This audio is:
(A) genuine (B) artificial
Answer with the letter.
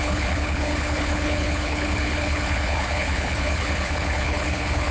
B